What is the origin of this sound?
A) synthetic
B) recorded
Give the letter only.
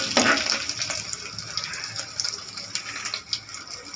B